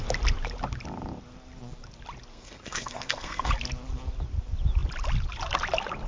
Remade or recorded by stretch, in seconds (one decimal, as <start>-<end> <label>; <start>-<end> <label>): 0.0-2.3 recorded; 2.3-3.5 remade; 3.5-6.1 recorded